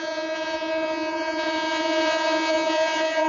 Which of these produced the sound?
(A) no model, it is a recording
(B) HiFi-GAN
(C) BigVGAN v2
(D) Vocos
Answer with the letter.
D